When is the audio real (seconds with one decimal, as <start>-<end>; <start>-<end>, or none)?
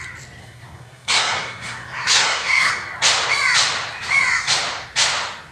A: 0.0-0.4; 2.7-5.5